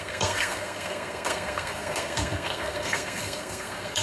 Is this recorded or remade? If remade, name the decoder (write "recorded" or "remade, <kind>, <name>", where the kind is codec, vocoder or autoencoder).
remade, codec, SNAC